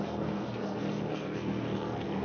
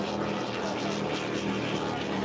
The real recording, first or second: second